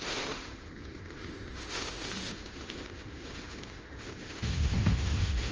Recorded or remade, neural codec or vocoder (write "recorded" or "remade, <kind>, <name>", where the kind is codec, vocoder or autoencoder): remade, autoencoder, DAC-VAE